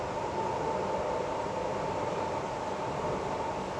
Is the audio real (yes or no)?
yes